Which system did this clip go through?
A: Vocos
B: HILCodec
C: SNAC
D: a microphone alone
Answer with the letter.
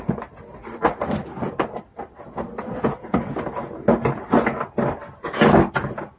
D